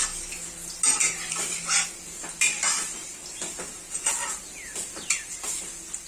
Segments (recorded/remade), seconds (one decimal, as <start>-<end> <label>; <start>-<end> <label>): 0.0-6.1 recorded